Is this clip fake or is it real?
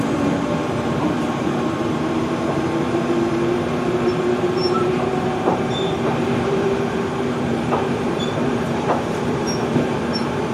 fake